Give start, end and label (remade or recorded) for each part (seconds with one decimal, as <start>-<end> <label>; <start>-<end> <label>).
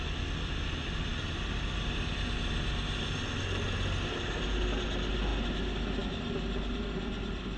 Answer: 0.0-7.6 recorded